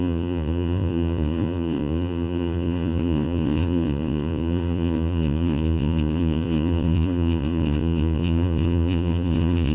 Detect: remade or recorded remade